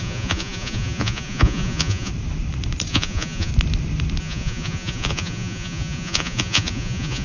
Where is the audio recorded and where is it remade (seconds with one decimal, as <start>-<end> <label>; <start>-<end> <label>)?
0.0-2.1 remade; 2.1-2.9 recorded; 2.9-3.5 remade; 3.5-4.2 recorded; 4.2-7.2 remade